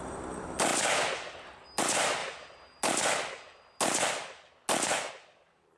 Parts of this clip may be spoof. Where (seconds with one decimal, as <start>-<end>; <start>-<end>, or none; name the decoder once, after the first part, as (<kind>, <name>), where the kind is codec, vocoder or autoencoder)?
none